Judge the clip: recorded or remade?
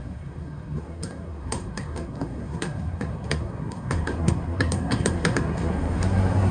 remade